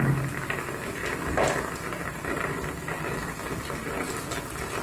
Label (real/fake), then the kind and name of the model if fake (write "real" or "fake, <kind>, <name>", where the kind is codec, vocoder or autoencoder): real